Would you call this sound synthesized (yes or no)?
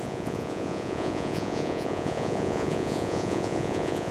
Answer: yes